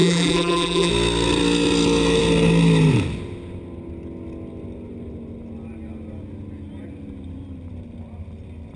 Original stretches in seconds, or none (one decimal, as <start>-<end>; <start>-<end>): 0.9-8.8